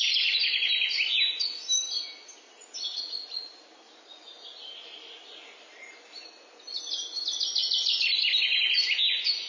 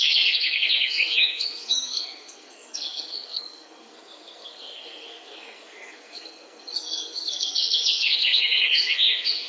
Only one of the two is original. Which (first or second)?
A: first